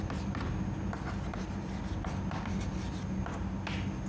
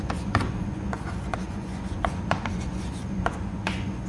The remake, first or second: second